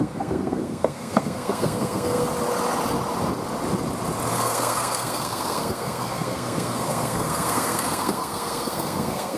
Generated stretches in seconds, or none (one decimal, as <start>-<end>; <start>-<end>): 0.0-2.3; 4.3-9.4